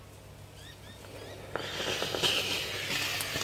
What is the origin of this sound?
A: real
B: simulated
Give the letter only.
A